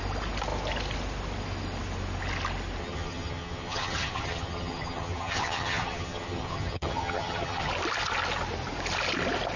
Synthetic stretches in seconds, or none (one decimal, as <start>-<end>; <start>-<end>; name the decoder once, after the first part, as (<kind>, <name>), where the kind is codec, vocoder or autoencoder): 2.8-7.7 (vocoder, HiFi-GAN)